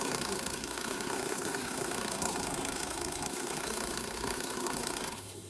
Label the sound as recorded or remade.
remade